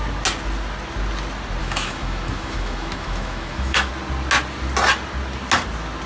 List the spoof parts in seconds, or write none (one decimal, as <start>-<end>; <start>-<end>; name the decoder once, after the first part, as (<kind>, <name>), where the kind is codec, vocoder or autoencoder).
1.6-3.9 (autoencoder, DAC-VAE)